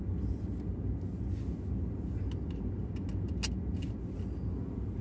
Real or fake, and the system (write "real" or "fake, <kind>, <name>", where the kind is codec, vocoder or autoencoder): real